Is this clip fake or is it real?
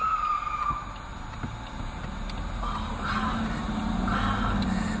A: real